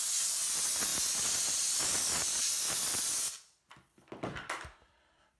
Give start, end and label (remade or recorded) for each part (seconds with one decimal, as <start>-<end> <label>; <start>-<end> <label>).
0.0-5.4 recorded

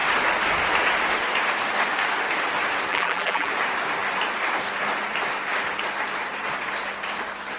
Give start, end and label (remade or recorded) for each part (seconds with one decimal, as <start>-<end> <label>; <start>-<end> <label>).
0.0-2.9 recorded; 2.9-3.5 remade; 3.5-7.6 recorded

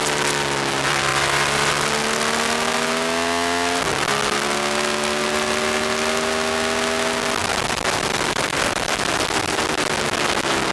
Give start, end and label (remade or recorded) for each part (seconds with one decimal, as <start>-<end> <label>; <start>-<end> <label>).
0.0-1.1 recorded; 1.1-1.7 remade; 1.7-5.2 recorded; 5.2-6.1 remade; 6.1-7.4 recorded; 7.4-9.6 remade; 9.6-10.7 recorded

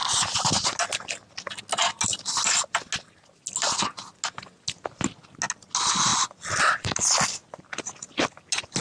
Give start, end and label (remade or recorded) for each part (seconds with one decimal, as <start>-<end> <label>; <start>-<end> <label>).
0.0-6.1 recorded; 6.1-7.7 remade; 7.7-8.8 recorded

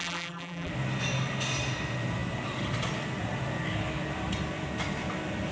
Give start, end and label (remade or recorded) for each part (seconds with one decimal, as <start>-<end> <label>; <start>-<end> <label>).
0.0-0.7 remade; 0.7-5.5 recorded

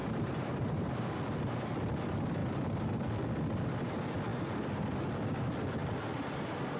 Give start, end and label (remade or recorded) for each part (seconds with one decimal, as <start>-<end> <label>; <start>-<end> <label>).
0.0-1.1 remade; 1.1-2.4 recorded; 2.4-3.0 remade; 3.0-6.8 recorded